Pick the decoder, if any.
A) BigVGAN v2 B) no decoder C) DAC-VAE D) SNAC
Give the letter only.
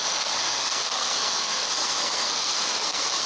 D